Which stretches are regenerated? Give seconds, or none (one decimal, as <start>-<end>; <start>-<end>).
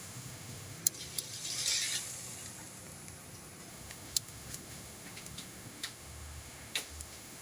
0.0-0.8; 3.7-7.4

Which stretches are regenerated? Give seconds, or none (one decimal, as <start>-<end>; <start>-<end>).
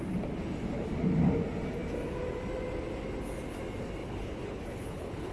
4.0-5.3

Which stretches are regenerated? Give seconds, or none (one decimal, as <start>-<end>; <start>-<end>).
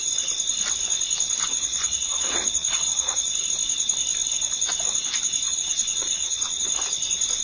1.5-3.3; 5.5-6.7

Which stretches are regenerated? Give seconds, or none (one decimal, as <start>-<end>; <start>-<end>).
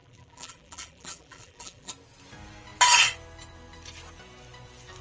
0.0-1.9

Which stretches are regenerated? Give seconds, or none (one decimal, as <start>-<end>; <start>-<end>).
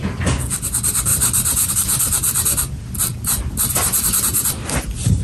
1.1-1.7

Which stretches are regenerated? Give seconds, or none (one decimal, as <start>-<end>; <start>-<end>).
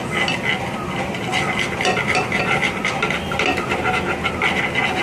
none